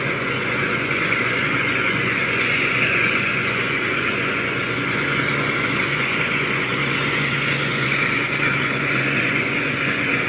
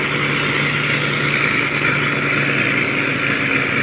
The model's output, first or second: first